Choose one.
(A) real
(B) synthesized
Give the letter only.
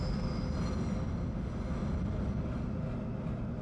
A